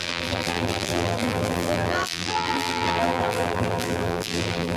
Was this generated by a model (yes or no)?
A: yes